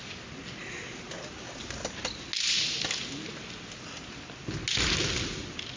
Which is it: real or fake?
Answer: real